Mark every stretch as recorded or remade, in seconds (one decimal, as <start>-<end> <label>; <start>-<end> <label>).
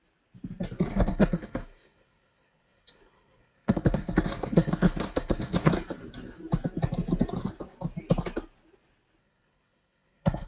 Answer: 0.0-0.9 recorded; 0.9-5.7 remade; 5.7-9.2 recorded; 9.2-10.5 remade